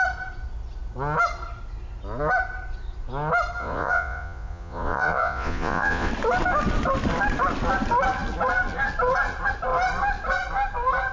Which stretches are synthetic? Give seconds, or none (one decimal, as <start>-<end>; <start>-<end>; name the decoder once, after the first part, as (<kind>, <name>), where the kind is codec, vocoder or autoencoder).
3.6-6.1 (vocoder, Vocos)

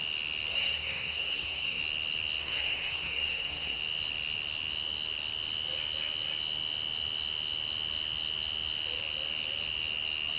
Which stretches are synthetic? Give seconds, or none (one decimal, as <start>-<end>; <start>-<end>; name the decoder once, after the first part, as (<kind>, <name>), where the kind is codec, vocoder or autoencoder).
0.5-1.8 (codec, SNAC); 2.4-3.8

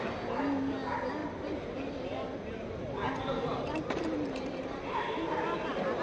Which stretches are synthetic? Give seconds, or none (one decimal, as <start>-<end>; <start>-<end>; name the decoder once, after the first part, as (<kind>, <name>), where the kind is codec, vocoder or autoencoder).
1.2-4.8 (vocoder, BigVGAN v2)

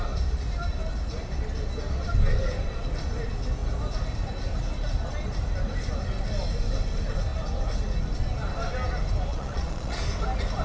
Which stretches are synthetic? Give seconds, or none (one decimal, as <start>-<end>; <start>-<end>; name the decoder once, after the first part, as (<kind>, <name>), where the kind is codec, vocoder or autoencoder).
9.3-10.0 (vocoder, Vocos)

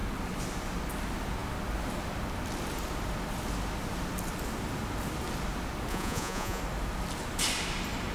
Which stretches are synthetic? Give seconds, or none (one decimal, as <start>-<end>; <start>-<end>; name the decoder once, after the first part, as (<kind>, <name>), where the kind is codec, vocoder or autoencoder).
5.9-6.6 (vocoder, Vocos)